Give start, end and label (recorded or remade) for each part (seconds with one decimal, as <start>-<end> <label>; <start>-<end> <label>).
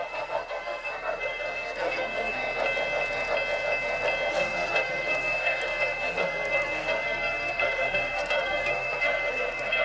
0.0-2.4 remade; 2.4-4.3 recorded; 4.3-9.8 remade